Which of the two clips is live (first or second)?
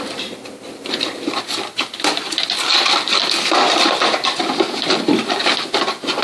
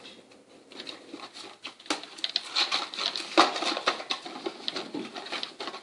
second